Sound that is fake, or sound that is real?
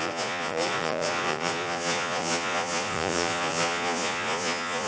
fake